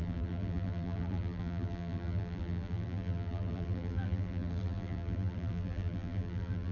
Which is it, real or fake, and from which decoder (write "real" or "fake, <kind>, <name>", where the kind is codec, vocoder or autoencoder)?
fake, vocoder, BigVGAN v2